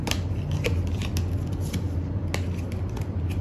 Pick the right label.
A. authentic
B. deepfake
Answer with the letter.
A